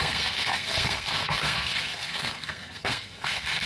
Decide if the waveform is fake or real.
fake